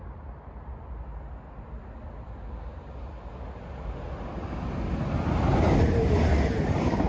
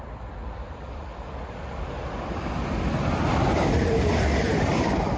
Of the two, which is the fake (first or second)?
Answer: second